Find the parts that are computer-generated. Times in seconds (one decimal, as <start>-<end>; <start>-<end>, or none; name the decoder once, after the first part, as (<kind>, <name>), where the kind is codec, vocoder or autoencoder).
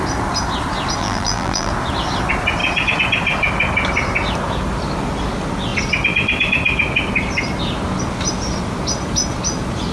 1.0-1.7 (vocoder, BigVGAN v2)